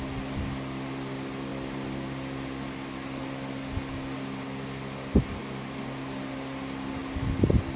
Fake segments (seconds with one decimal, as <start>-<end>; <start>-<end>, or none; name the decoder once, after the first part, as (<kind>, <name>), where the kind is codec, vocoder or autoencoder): none